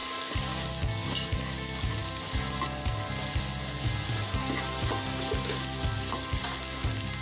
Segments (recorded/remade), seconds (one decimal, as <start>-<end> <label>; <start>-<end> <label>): 0.0-7.2 recorded